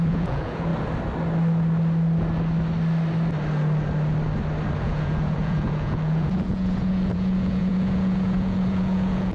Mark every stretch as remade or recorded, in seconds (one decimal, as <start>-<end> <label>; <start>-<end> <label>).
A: 0.0-0.7 remade; 0.7-4.8 recorded; 4.8-9.3 remade